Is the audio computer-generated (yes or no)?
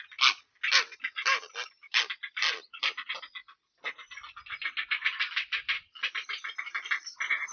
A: no